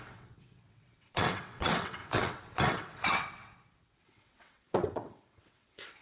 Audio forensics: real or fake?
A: fake